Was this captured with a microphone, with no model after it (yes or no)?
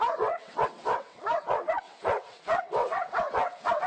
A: no